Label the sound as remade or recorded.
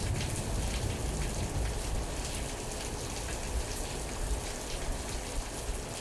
recorded